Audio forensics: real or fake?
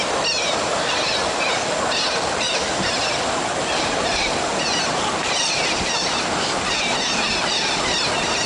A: real